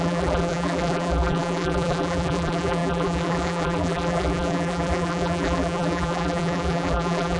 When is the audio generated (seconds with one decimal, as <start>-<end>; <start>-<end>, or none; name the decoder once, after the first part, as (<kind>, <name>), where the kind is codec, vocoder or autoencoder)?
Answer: 0.0-7.4 (vocoder, BigVGAN v2)